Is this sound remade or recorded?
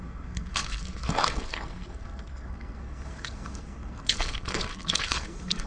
remade